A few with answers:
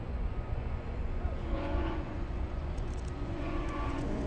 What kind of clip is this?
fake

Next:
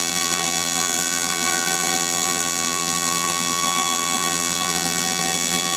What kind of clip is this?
fake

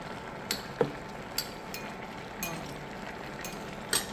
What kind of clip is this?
real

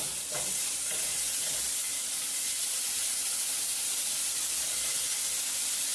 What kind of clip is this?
real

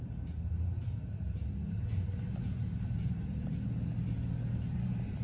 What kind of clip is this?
fake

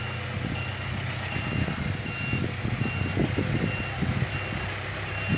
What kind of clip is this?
real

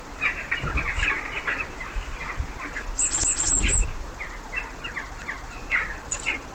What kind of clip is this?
real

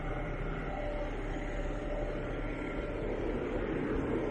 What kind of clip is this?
real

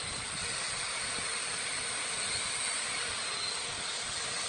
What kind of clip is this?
real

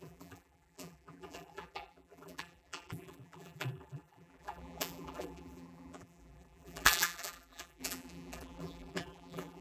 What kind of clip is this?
fake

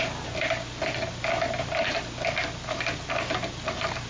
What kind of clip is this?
real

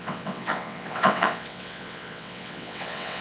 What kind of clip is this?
fake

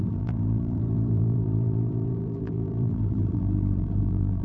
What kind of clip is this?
fake